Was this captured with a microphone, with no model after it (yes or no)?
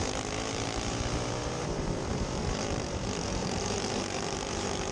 no